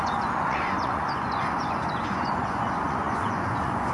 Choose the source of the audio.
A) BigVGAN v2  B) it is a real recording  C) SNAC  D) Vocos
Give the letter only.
D